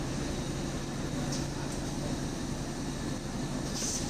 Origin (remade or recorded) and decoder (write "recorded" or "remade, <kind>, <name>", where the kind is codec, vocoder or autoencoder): recorded